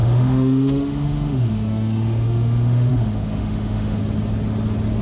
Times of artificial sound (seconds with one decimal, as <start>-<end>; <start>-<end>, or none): 0.0-4.0